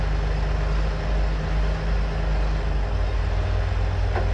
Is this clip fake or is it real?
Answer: real